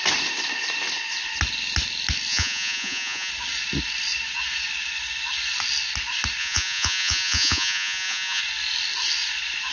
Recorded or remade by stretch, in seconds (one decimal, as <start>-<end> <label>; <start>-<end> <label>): 0.0-2.3 recorded; 2.3-3.3 remade; 3.3-6.4 recorded; 6.4-8.4 remade; 8.4-9.7 recorded